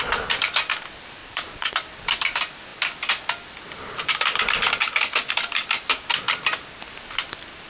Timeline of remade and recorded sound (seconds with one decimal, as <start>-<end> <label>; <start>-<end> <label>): 0.0-1.2 recorded; 1.2-1.7 remade; 1.7-7.7 recorded